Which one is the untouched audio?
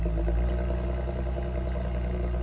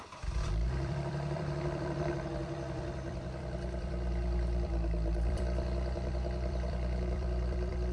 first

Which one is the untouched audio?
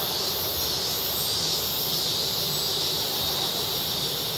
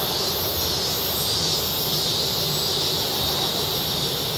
second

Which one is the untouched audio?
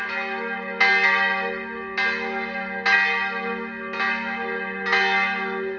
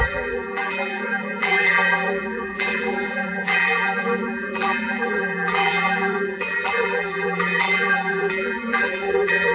first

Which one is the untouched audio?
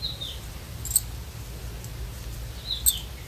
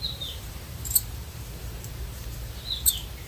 first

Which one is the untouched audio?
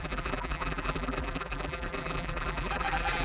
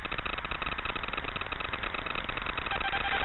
second